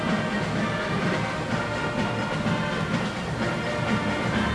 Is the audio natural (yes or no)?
yes